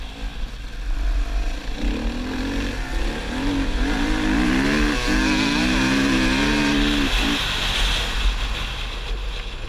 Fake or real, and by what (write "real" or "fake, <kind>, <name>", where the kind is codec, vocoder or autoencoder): real